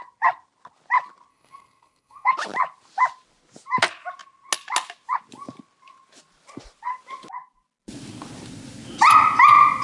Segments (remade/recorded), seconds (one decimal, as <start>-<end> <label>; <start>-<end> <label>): 0.0-1.3 recorded; 1.3-2.3 remade; 2.3-9.8 recorded